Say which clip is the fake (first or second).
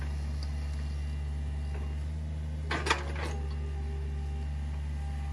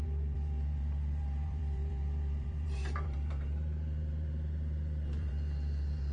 second